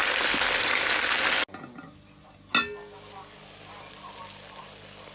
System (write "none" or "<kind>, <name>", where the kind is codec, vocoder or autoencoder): none